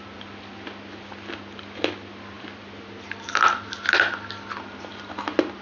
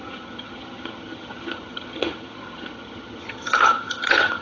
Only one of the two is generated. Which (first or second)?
second